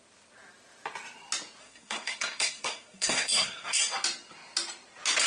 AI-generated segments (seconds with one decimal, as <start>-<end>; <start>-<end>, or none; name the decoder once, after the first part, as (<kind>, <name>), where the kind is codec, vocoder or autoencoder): 1.6-3.8 (codec, SNAC)